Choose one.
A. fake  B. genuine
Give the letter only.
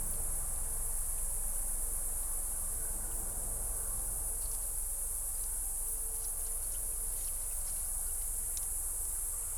B